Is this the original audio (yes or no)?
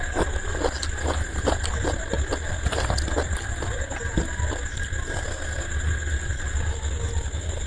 yes